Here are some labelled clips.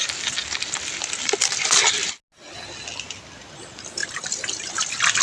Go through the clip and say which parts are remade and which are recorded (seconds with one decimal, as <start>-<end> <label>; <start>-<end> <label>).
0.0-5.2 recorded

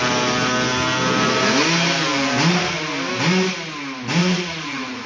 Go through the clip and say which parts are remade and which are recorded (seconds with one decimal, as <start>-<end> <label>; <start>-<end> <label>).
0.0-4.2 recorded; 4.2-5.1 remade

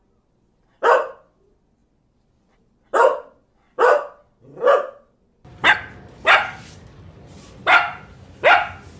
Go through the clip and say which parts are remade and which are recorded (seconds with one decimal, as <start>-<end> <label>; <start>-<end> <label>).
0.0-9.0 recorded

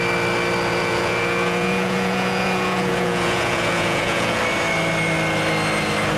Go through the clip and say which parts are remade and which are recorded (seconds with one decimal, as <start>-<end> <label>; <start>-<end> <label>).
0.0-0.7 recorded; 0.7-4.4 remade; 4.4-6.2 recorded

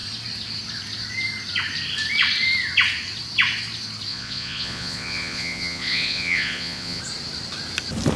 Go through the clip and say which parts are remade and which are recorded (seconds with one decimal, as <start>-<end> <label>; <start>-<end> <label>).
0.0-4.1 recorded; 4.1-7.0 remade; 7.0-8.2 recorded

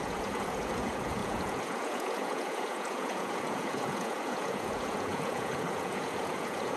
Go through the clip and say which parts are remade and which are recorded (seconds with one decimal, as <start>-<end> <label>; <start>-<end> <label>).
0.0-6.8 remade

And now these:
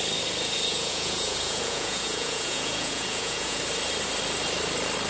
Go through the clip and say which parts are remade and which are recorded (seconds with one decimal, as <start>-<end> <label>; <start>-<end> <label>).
0.0-0.7 recorded; 0.7-3.6 remade; 3.6-5.1 recorded

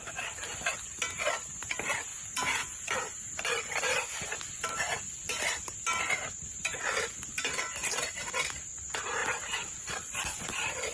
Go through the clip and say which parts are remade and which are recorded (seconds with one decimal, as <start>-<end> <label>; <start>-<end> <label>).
0.0-2.1 recorded; 2.1-2.8 remade; 2.8-10.9 recorded